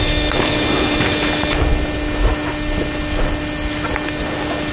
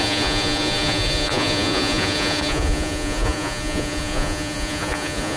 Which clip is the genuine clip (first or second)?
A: first